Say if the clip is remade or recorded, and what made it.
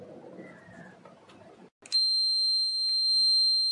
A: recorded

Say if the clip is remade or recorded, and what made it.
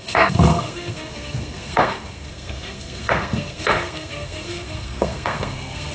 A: remade, codec, SNAC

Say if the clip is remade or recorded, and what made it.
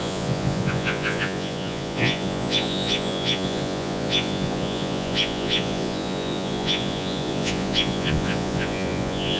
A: remade, vocoder, Vocos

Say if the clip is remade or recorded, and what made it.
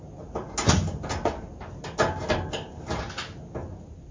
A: recorded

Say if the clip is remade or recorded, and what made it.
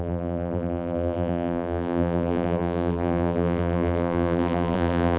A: remade, vocoder, BigVGAN v2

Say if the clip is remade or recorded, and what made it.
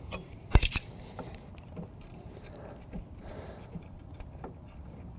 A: remade, vocoder, BigVGAN v2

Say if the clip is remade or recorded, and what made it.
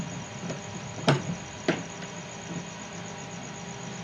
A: recorded